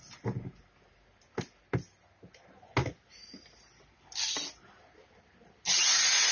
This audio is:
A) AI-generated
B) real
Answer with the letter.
B